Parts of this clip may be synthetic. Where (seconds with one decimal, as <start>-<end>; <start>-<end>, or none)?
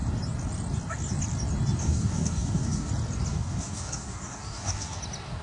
1.8-2.9; 3.3-5.0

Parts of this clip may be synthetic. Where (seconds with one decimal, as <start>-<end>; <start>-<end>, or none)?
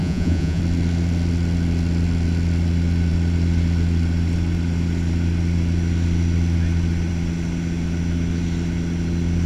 0.0-0.6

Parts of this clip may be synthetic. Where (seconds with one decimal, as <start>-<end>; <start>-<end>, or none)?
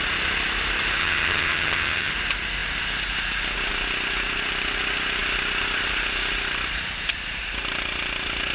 1.0-2.1